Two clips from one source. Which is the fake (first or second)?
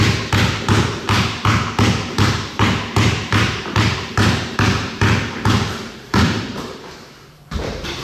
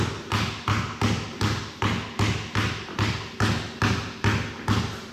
first